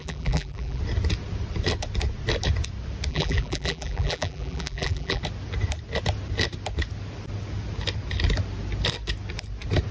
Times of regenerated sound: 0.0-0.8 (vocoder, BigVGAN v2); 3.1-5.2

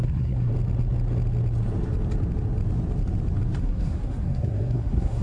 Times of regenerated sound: 0.0-0.5 (codec, SNAC); 3.6-5.2

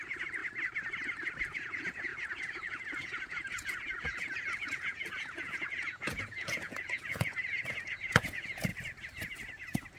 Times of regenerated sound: 0.0-0.4 (vocoder, Vocos); 1.4-8.7

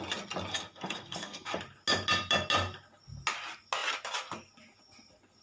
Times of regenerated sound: 0.5-1.6 (codec, SNAC)

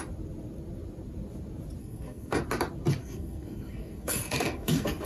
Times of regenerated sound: 1.8-2.4 (codec, SNAC); 3.0-5.1

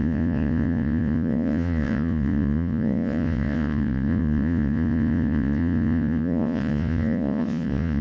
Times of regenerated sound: 0.0-8.0 (vocoder, Vocos)

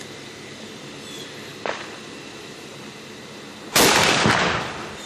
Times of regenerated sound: 0.0-2.7 (vocoder, BigVGAN v2); 4.6-5.1